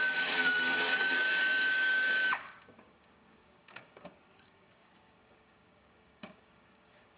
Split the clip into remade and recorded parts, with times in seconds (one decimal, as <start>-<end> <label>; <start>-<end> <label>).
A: 0.0-7.2 remade